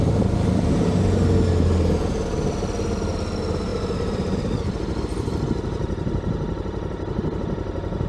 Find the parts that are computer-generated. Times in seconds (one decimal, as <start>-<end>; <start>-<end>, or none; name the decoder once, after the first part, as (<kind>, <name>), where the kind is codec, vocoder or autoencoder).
3.7-5.0 (vocoder, BigVGAN v2)